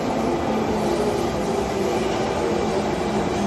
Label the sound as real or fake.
real